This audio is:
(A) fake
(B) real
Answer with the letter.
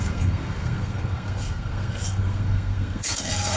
A